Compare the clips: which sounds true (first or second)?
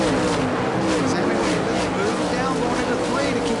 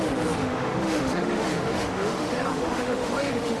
first